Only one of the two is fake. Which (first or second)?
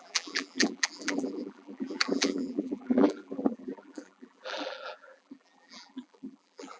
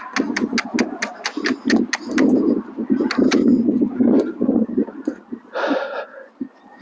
first